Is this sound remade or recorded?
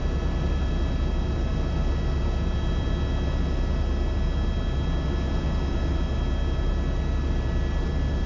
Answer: recorded